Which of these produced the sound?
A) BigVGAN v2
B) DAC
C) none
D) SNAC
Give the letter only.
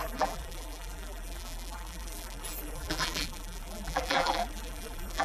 A